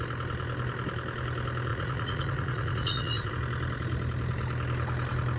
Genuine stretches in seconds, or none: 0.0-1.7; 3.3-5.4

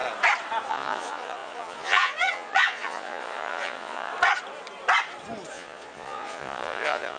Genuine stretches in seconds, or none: 0.0-0.7; 4.1-5.5

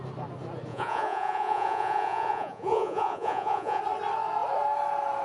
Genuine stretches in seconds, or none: 0.0-0.7; 3.8-5.2

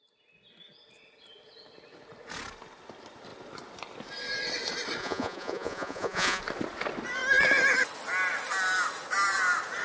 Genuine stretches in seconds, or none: 0.0-5.0; 6.4-9.8

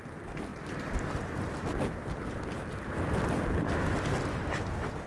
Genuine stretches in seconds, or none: 0.0-5.1

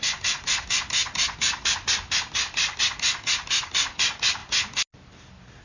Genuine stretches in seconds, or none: 0.0-5.6